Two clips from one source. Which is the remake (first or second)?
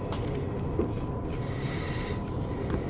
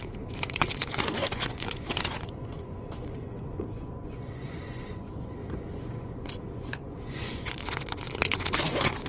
second